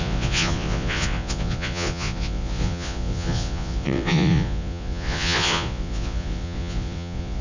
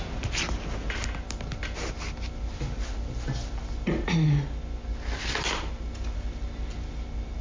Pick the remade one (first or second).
first